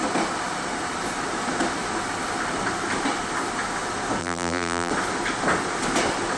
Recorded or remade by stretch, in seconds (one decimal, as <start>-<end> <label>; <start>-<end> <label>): 0.0-4.2 recorded; 4.2-4.9 remade; 4.9-6.4 recorded